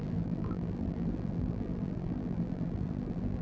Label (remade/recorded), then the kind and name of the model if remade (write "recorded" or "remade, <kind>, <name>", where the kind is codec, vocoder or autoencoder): remade, vocoder, BigVGAN v2